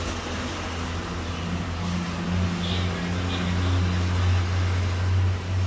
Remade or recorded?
recorded